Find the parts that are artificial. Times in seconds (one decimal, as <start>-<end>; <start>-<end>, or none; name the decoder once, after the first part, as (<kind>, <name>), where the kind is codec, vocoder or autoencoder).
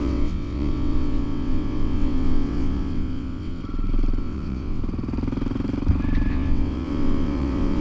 0.0-3.6 (vocoder, WaveNeXt); 4.2-4.8; 6.3-7.8